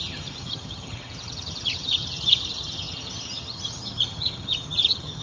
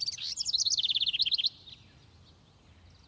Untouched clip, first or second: second